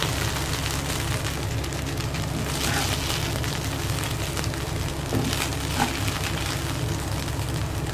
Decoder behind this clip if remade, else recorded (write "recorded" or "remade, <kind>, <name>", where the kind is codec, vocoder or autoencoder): recorded